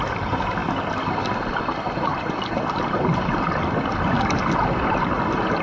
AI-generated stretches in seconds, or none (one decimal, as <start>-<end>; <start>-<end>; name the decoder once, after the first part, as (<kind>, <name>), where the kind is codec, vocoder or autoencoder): none